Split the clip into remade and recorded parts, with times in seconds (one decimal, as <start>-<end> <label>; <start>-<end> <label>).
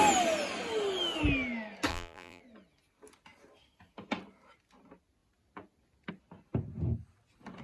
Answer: 0.0-1.9 recorded; 1.9-2.4 remade; 2.4-7.6 recorded